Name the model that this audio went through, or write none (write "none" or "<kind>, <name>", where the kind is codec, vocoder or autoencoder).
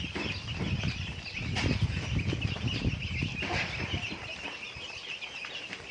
vocoder, BigVGAN v2